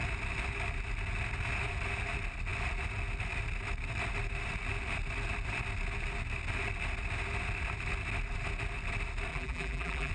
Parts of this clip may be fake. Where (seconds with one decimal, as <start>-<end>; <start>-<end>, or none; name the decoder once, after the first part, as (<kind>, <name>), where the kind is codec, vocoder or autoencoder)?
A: 9.3-10.1 (vocoder, BigVGAN v2)